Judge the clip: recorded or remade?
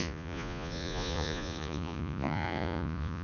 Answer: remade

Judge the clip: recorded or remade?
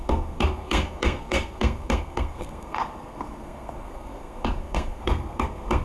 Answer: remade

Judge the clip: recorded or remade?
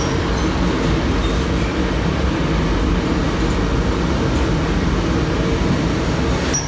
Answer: recorded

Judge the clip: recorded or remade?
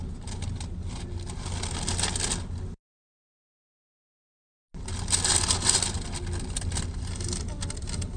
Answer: recorded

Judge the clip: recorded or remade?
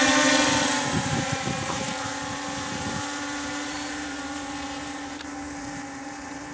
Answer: remade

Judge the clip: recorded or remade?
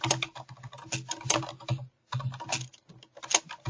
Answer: recorded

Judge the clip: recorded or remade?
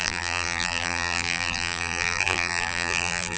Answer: remade